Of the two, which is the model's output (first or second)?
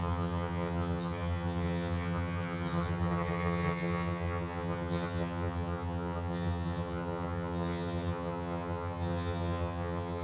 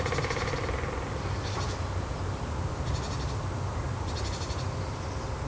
first